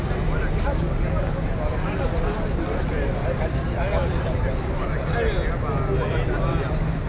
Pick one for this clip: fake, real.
real